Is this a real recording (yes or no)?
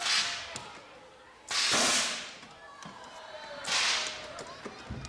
yes